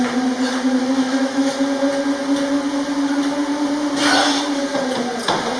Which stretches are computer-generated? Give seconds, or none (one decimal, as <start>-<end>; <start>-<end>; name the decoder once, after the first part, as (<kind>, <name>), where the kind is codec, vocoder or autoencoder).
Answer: 0.8-1.5 (autoencoder, DAC-VAE)

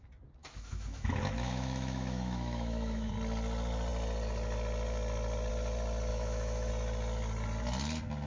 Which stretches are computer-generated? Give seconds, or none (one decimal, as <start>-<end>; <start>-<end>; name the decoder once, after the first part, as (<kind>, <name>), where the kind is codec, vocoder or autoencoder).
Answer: 0.4-3.1 (autoencoder, DAC-VAE); 6.1-6.7

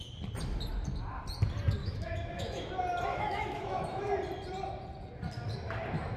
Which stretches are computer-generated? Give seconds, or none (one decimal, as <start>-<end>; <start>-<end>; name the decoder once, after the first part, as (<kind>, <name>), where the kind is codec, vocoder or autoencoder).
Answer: 1.8-2.7 (autoencoder, DAC-VAE); 3.1-4.1

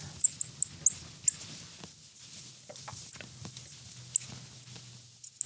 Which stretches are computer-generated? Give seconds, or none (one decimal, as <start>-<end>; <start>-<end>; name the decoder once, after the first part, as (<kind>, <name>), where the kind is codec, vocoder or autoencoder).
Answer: none

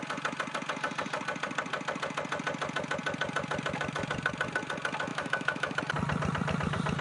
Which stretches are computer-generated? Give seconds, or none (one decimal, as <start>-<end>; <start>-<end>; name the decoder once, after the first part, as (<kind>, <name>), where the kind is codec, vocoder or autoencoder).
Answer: 5.1-5.8 (autoencoder, DAC-VAE)

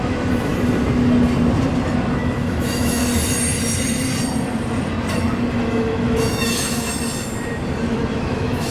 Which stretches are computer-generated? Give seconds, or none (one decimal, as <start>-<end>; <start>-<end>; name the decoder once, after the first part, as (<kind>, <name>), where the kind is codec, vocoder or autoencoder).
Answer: 0.0-0.5 (autoencoder, DAC-VAE); 2.2-3.0; 5.5-6.9; 7.8-8.7

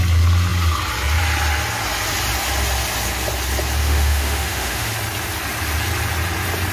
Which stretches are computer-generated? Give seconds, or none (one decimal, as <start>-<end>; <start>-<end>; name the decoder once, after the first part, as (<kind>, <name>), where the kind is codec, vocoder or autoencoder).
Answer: 3.8-4.9 (autoencoder, DAC-VAE)

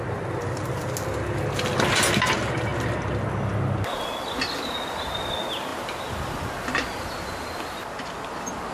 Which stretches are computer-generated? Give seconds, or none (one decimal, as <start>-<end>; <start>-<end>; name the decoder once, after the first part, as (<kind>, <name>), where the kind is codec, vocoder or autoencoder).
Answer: none